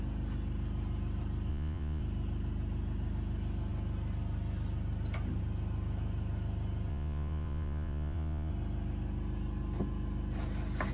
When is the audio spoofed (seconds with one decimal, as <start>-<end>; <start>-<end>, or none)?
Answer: 1.5-2.0; 6.9-8.5